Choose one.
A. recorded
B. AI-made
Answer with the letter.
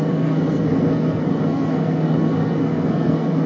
B